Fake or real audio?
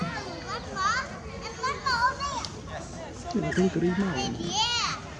real